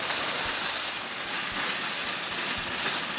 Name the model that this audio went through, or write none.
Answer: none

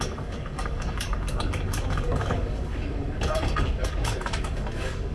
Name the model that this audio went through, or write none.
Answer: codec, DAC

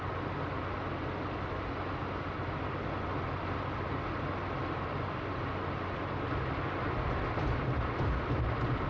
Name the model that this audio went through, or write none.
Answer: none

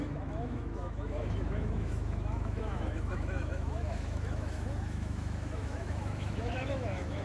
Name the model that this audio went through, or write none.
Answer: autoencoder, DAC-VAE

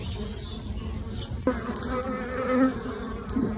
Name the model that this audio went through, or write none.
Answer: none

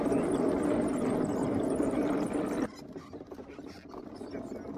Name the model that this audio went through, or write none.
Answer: none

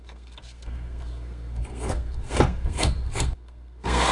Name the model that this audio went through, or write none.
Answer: codec, SNAC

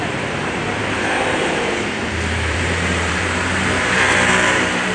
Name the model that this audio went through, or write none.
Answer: vocoder, BigVGAN v2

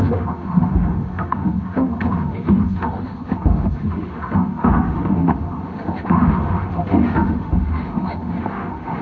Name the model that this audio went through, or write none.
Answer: autoencoder, DAC-VAE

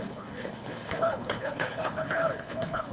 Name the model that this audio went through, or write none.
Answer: codec, HILCodec